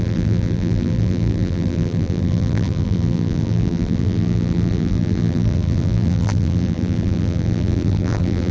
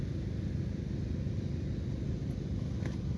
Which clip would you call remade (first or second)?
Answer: first